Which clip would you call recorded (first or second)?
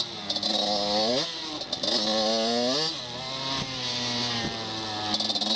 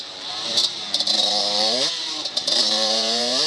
first